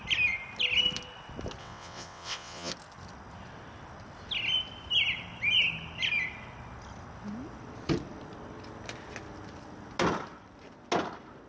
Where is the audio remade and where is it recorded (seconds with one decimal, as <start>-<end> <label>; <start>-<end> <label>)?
0.0-1.6 recorded; 1.6-2.7 remade; 2.7-11.5 recorded